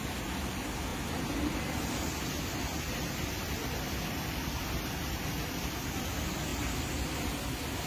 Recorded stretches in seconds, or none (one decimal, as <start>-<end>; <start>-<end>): 0.0-7.9